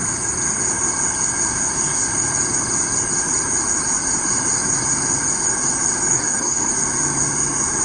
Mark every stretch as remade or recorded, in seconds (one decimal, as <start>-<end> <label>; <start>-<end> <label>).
0.0-6.1 recorded; 6.1-6.7 remade; 6.7-7.8 recorded